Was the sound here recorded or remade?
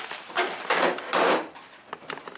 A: recorded